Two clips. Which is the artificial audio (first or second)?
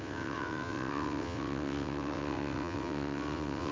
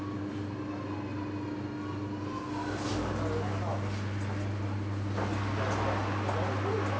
first